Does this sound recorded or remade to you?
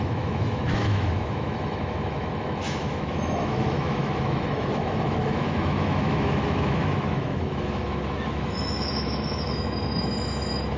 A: remade